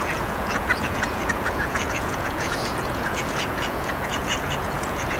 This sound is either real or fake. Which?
fake